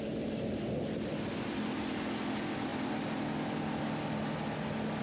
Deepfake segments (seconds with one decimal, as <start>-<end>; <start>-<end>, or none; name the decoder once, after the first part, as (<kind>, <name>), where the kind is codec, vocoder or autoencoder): none